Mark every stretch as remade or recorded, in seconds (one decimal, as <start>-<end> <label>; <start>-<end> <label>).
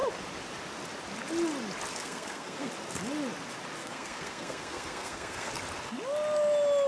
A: 0.0-1.9 recorded; 1.9-2.7 remade; 2.7-3.8 recorded; 3.8-5.5 remade; 5.5-6.9 recorded